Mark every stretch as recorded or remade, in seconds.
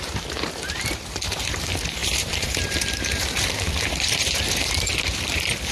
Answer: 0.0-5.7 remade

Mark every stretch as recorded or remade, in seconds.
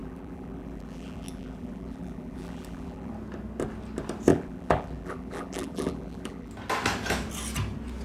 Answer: 0.0-3.1 remade; 3.1-4.3 recorded; 4.3-6.5 remade; 6.5-8.0 recorded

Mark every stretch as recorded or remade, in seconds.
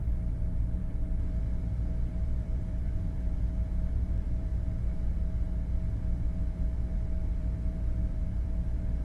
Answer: 0.0-4.5 remade; 4.5-6.9 recorded; 6.9-9.0 remade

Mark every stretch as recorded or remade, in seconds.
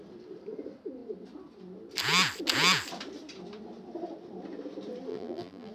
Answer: 0.0-5.1 recorded; 5.1-5.7 remade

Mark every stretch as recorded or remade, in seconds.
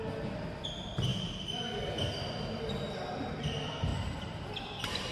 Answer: 0.0-3.9 recorded; 3.9-4.5 remade; 4.5-5.1 recorded